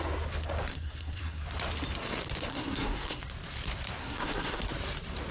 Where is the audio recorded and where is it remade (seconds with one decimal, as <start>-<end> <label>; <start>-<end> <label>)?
0.0-0.7 recorded; 0.7-1.4 remade; 1.4-2.5 recorded; 2.5-3.2 remade; 3.2-4.0 recorded; 4.0-4.6 remade; 4.6-5.3 recorded